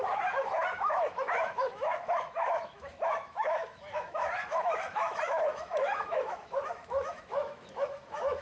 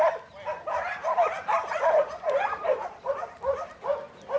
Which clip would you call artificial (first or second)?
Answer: first